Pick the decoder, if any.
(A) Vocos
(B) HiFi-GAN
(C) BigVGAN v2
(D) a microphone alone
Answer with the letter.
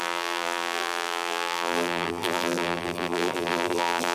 C